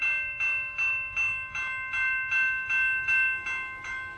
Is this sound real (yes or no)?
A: yes